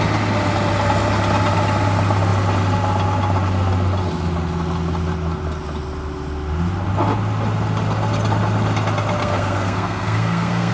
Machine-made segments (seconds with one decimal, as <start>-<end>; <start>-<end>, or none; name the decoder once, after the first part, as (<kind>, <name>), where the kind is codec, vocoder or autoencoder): 9.2-10.7 (codec, SNAC)